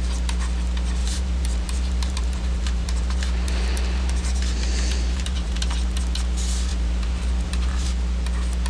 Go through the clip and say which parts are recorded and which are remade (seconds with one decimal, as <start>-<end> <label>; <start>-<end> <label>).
0.0-1.0 recorded; 1.0-6.0 remade; 6.0-6.7 recorded; 6.7-7.9 remade; 7.9-8.7 recorded